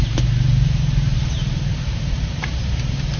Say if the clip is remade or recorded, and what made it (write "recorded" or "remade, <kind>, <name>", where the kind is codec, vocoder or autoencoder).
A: remade, vocoder, BigVGAN v2